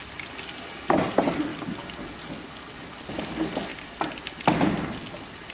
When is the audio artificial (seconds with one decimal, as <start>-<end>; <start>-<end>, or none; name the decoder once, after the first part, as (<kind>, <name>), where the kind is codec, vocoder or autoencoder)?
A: none